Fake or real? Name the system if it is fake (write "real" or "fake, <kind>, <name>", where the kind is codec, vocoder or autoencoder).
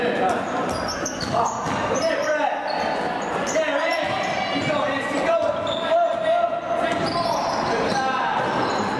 real